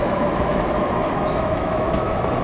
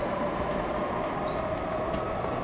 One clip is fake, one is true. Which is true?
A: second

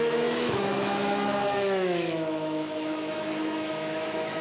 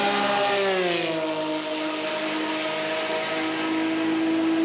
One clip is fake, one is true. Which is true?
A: second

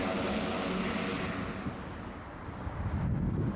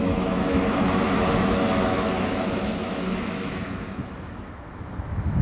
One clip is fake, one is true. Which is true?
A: first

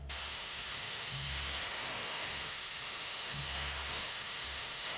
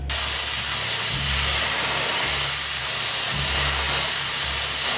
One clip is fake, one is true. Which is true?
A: second